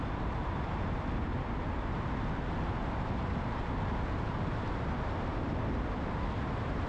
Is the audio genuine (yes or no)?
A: yes